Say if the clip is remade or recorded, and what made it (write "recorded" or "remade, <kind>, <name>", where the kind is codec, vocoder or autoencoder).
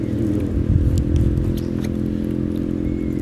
recorded